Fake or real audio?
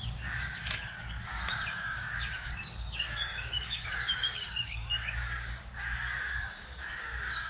fake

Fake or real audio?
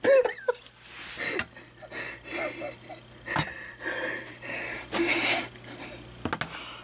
real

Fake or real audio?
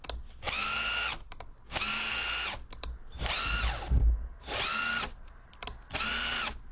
real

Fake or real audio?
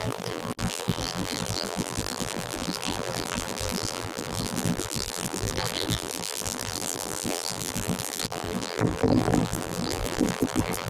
fake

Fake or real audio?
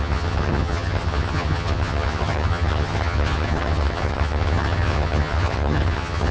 fake